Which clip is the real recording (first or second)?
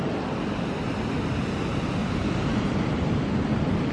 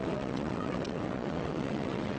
first